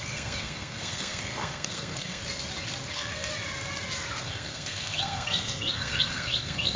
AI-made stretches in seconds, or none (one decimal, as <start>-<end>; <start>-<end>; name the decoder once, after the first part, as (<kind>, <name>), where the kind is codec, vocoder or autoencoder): 0.0-2.2 (codec, SNAC); 2.9-3.3; 4.2-6.8